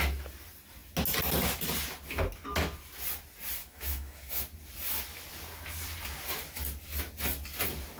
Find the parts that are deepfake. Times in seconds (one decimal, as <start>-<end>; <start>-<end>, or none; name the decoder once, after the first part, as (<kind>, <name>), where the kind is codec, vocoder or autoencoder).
3.6-4.4 (autoencoder, DAC-VAE)